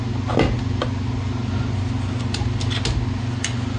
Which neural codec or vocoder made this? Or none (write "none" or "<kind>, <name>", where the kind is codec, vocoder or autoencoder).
none